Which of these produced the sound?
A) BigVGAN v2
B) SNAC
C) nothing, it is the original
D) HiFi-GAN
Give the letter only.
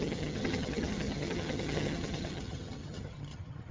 D